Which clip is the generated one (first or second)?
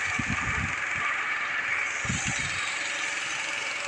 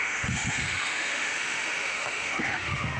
second